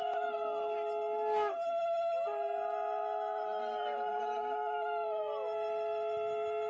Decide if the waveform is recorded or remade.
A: recorded